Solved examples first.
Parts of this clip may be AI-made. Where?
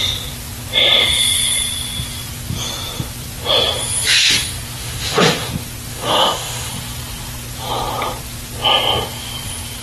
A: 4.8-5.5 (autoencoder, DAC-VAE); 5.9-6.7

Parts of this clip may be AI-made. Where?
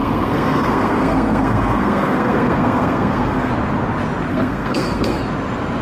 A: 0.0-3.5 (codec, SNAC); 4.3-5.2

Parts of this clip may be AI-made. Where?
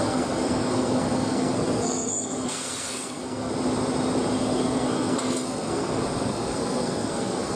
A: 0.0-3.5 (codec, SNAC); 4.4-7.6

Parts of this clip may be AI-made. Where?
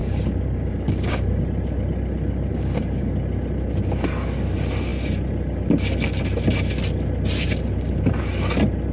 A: 0.0-1.4 (codec, DAC); 2.5-3.1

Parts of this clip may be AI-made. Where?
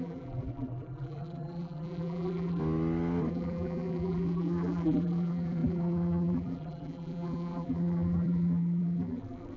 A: 0.0-2.6 (vocoder, BigVGAN v2); 3.3-9.6